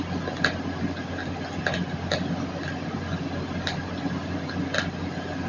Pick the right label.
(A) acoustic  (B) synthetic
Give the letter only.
A